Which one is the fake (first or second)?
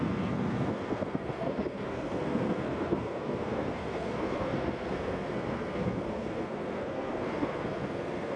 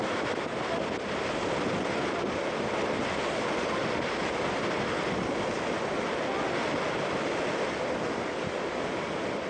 first